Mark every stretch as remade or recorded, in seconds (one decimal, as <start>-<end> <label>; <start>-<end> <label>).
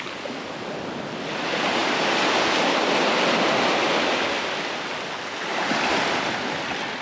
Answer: 0.0-7.0 recorded